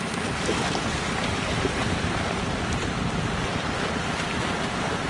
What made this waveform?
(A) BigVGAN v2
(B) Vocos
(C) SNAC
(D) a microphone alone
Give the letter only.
D